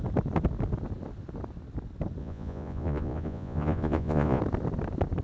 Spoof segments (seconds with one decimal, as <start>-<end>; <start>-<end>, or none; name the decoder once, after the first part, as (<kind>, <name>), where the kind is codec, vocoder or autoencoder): 2.2-4.4 (vocoder, Vocos)